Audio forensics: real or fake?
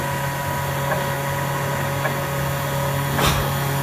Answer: real